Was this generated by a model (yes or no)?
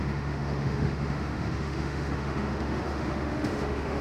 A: yes